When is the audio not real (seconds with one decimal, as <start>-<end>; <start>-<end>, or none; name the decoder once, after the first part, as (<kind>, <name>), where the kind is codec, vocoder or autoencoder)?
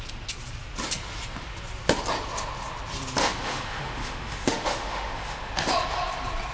3.2-5.7 (autoencoder, DAC-VAE)